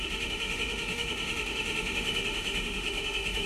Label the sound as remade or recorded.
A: remade